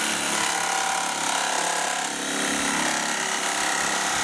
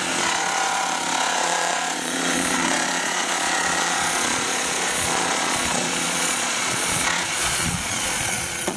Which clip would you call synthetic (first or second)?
second